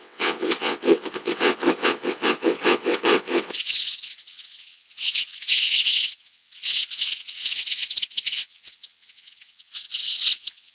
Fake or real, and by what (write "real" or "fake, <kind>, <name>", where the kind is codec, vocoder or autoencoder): fake, vocoder, WaveNeXt